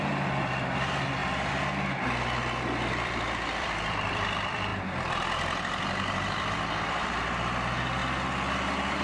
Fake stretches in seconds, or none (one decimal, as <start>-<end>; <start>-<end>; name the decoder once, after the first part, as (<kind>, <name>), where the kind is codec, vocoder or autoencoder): 0.0-1.2 (vocoder, BigVGAN v2); 2.9-8.0